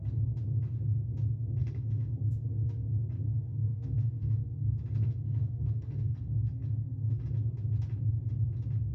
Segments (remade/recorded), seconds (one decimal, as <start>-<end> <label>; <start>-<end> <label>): 0.0-1.6 recorded; 1.6-2.2 remade; 2.2-3.2 recorded; 3.2-7.2 remade; 7.2-8.9 recorded